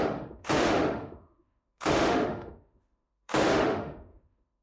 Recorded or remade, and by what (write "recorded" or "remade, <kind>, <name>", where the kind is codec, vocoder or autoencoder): remade, autoencoder, DAC-VAE